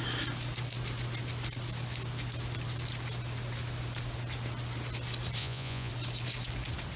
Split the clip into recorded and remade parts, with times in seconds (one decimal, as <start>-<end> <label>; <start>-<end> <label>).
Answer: 0.0-5.4 recorded; 5.4-5.9 remade; 5.9-7.0 recorded